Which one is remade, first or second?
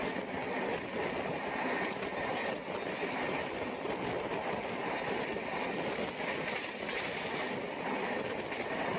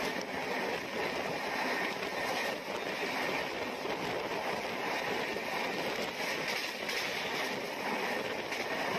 first